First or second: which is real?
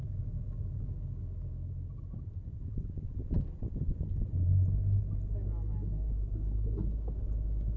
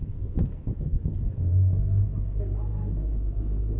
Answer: first